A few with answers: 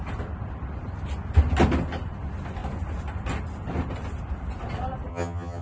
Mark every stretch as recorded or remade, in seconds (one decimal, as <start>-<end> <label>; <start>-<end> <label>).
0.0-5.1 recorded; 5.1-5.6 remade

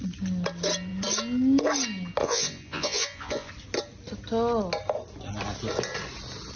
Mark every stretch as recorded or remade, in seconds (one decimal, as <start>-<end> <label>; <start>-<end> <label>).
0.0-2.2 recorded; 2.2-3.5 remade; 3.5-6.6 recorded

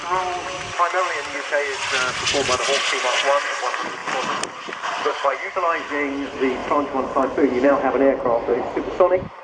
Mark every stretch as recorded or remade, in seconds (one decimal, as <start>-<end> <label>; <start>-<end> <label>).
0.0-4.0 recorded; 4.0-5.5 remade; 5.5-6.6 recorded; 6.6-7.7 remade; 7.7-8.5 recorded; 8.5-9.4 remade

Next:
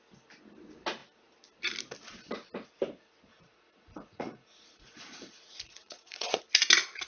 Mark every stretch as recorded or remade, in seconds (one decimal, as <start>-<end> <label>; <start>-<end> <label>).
0.0-3.3 recorded; 3.3-6.4 remade; 6.4-7.1 recorded

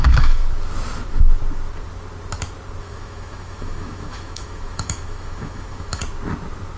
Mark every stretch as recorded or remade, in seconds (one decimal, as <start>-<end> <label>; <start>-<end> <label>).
0.0-0.4 remade; 0.4-2.8 recorded; 2.8-6.0 remade; 6.0-6.8 recorded

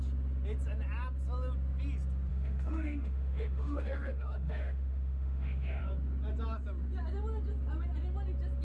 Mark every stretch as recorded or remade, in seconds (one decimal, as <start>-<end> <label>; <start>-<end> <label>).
0.0-2.3 recorded; 2.3-5.8 remade; 5.8-8.6 recorded

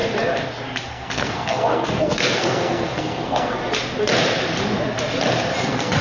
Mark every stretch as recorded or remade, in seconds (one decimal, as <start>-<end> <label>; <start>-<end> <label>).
0.0-0.9 recorded; 0.9-3.6 remade; 3.6-5.6 recorded; 5.6-6.0 remade